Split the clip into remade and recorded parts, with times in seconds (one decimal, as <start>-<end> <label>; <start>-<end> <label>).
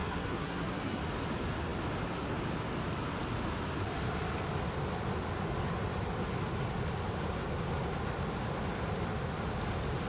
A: 0.0-1.0 remade; 1.0-10.1 recorded